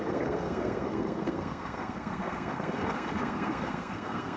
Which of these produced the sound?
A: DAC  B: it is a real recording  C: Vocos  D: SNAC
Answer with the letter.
D